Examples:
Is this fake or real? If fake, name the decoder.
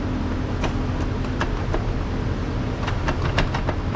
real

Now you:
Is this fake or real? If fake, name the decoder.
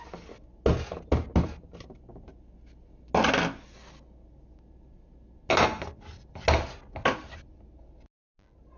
real